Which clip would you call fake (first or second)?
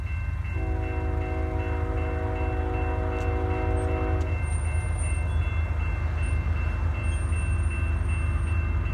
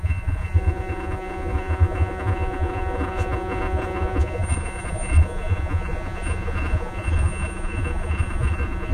second